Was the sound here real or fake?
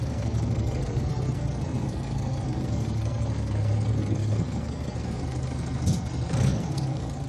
fake